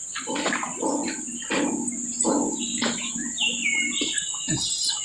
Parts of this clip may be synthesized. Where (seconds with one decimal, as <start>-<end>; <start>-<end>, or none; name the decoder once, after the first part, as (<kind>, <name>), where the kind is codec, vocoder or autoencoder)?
none